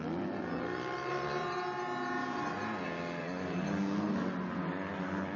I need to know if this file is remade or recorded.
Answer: recorded